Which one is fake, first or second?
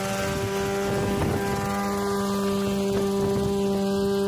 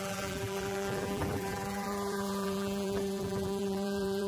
second